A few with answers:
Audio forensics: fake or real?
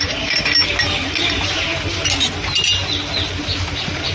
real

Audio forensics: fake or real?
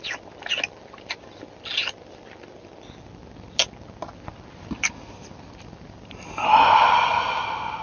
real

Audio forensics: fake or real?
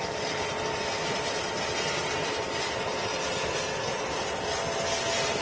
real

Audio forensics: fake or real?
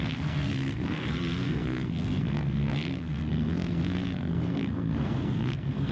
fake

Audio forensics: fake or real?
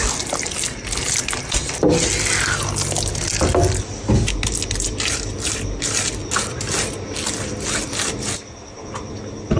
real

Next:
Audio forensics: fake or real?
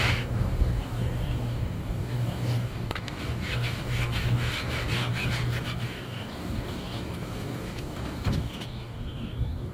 fake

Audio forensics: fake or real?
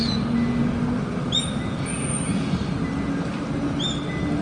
real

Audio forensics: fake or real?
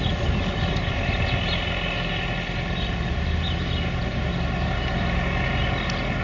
real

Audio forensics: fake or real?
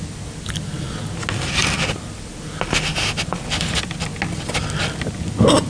real